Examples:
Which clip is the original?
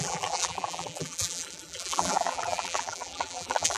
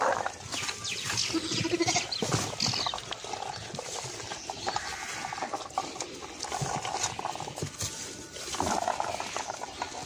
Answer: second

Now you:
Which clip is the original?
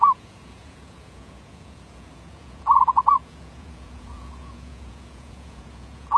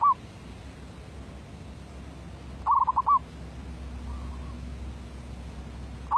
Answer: second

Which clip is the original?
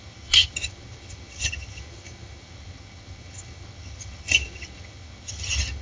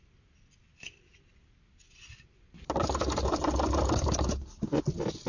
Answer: second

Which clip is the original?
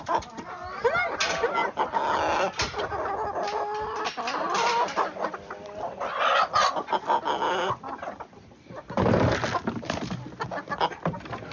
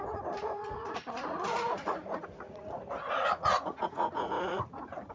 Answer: first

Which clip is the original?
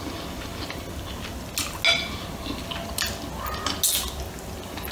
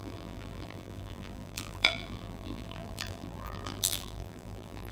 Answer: first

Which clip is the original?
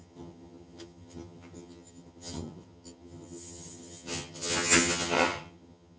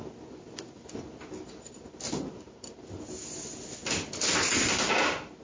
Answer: second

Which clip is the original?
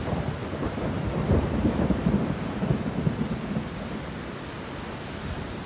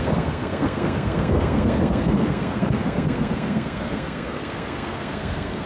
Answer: first